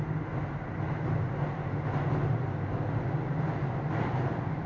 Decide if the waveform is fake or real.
real